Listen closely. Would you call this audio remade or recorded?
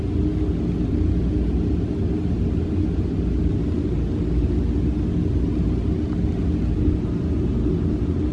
recorded